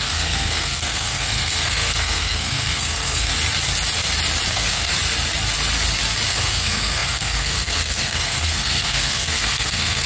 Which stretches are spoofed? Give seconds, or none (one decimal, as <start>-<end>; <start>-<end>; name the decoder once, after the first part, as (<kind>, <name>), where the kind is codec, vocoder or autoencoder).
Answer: 0.0-3.3 (codec, SNAC); 4.5-4.9; 6.3-10.1